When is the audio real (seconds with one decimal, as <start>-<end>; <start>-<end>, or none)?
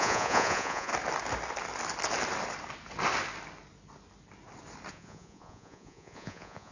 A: 0.9-4.9